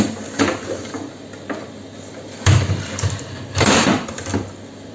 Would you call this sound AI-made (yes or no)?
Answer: yes